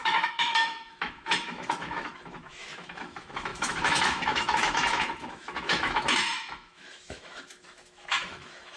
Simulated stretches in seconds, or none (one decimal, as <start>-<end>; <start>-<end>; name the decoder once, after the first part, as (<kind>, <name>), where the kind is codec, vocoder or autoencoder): 0.0-8.8 (autoencoder, DAC-VAE)